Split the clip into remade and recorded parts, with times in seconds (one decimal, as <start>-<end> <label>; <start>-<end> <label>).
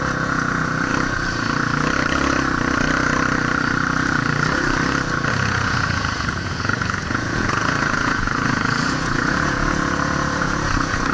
0.0-0.9 remade; 0.9-5.3 recorded; 5.3-11.1 remade